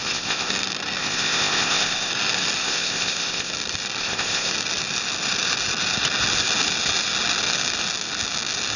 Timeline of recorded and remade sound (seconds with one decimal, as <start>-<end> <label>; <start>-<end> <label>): 0.0-0.5 remade; 0.5-1.0 recorded; 1.0-2.1 remade; 2.1-2.6 recorded; 2.6-3.5 remade; 3.5-4.0 recorded; 4.0-4.5 remade; 4.5-8.8 recorded